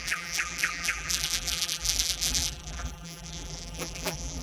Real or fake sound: fake